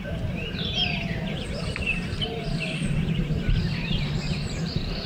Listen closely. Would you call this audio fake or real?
fake